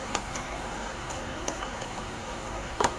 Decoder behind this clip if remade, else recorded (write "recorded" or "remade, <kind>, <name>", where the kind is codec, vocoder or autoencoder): remade, codec, SNAC